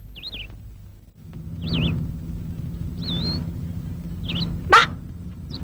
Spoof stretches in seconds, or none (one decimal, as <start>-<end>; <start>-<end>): 4.8-5.6